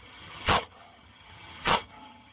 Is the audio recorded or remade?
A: remade